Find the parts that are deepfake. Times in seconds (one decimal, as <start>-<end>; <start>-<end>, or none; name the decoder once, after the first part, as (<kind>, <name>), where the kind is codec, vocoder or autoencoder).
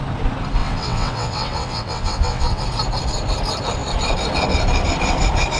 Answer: 0.6-2.6 (vocoder, WaveNeXt)